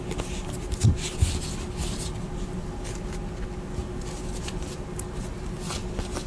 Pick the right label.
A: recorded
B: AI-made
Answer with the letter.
A